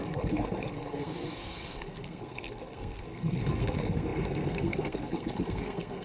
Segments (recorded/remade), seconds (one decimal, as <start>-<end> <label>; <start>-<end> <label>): 0.0-6.0 remade